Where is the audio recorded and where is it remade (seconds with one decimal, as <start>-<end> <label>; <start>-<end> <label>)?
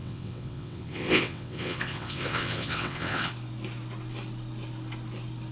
0.0-3.3 remade; 3.3-5.5 recorded